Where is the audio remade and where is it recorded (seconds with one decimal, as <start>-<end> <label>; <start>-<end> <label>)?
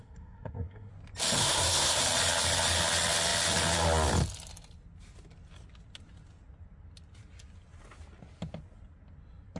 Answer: 0.0-0.9 remade; 0.9-1.4 recorded; 1.4-2.0 remade; 2.0-9.6 recorded